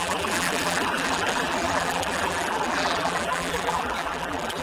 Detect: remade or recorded remade